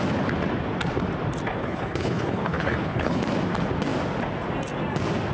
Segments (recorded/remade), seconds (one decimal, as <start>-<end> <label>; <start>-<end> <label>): 0.0-1.6 recorded; 1.6-3.2 remade; 3.2-5.3 recorded